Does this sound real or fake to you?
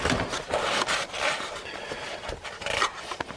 real